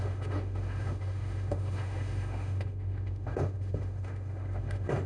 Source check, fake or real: fake